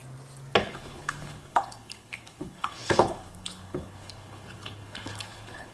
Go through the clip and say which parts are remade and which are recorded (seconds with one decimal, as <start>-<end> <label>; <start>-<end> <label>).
0.0-0.6 recorded; 0.6-5.7 remade